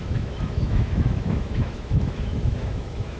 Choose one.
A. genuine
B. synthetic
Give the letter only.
B